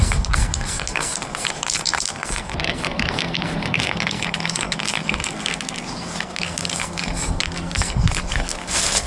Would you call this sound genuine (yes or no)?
no